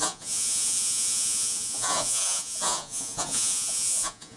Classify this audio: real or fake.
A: fake